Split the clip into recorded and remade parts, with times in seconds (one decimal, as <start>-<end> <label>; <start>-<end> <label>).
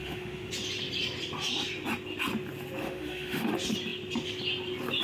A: 0.0-0.5 remade; 0.5-2.8 recorded; 2.8-3.5 remade; 3.5-5.0 recorded